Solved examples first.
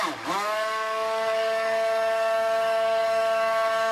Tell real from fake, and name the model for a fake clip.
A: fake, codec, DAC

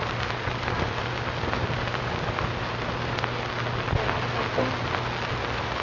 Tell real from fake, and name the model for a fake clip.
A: real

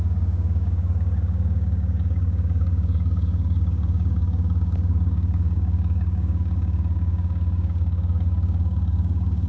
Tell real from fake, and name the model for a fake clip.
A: fake, codec, DAC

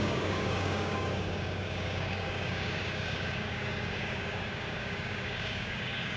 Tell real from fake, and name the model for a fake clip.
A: fake, codec, DAC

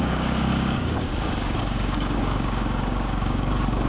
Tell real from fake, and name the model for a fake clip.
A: fake, codec, DAC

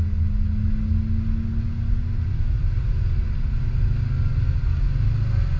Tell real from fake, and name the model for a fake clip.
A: real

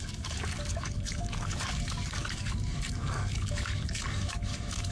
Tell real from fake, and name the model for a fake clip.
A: fake, codec, DAC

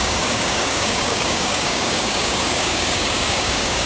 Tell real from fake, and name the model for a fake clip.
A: fake, codec, DAC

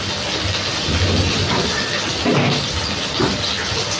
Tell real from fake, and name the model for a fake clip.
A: real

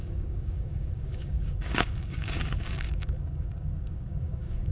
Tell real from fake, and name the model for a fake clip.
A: fake, codec, DAC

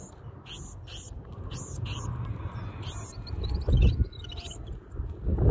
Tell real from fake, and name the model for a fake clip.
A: real